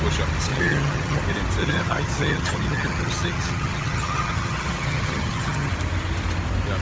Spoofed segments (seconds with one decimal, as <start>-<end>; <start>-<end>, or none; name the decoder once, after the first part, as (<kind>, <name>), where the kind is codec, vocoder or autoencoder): 0.5-1.2 (vocoder, HiFi-GAN); 1.6-5.7